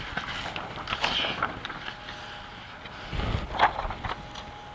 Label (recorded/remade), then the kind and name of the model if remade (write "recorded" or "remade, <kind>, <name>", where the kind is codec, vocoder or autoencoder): recorded